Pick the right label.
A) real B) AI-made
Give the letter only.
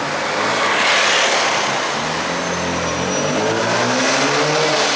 A